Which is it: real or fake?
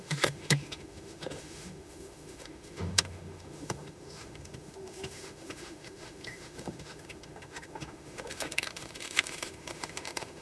fake